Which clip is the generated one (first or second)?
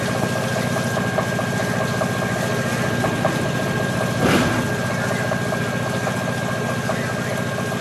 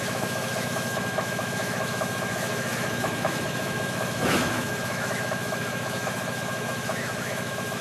second